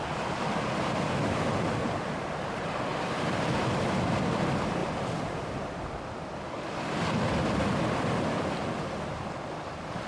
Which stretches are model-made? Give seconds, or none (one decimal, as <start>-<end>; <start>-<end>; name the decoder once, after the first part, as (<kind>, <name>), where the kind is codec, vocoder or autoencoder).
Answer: none